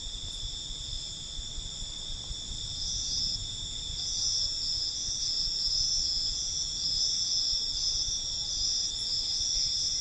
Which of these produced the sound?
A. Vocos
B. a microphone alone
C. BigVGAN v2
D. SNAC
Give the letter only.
C